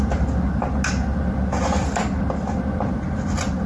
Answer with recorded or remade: recorded